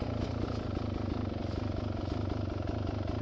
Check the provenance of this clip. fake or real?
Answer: real